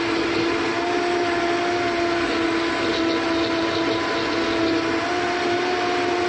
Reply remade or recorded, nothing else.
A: recorded